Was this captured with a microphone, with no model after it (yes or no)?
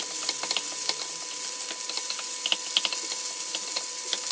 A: yes